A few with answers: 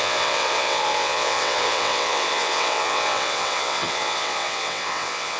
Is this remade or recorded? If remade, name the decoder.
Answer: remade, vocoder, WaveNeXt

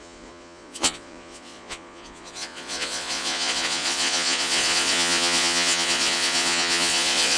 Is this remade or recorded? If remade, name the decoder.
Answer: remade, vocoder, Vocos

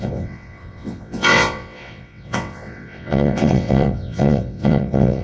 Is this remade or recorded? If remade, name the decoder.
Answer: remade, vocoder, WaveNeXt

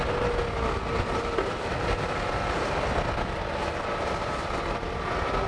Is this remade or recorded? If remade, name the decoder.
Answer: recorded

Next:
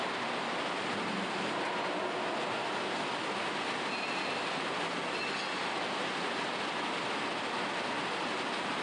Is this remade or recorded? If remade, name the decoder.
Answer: recorded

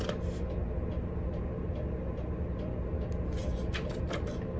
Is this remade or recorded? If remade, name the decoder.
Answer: recorded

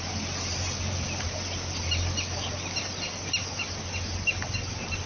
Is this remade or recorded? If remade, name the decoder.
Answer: recorded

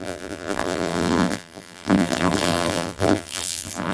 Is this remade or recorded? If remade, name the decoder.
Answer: remade, vocoder, BigVGAN v2